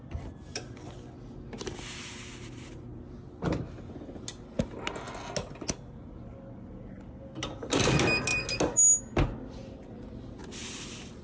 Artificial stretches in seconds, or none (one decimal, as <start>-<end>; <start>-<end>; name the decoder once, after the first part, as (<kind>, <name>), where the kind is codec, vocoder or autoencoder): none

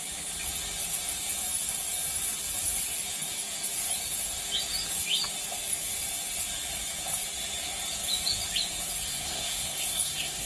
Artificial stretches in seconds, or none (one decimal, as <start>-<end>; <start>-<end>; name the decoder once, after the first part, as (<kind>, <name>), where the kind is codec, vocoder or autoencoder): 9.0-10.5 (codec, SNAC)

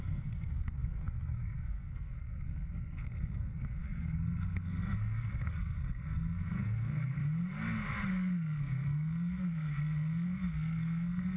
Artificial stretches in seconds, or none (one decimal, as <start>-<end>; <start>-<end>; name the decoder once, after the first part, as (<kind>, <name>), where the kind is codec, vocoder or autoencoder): 0.0-7.2 (codec, SNAC); 8.1-11.4